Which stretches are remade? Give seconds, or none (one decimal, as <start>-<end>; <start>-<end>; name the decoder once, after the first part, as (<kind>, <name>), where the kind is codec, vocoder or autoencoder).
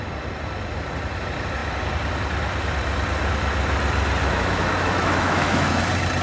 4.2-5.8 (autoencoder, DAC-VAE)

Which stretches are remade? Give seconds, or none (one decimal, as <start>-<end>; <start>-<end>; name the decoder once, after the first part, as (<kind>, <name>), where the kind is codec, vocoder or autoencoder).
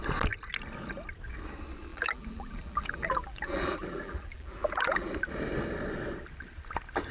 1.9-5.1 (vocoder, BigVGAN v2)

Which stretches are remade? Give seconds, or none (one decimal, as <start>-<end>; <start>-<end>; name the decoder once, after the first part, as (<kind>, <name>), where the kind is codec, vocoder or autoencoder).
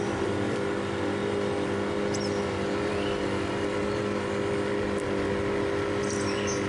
none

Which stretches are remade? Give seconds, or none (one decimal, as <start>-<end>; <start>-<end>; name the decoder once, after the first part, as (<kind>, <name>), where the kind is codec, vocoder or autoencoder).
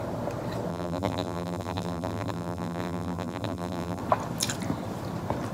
0.7-4.0 (vocoder, BigVGAN v2)